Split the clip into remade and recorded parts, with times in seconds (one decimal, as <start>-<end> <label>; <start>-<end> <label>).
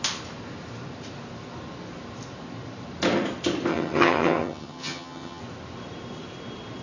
0.0-3.7 recorded; 3.7-5.4 remade; 5.4-6.8 recorded